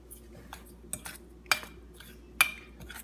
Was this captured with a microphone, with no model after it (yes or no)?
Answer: yes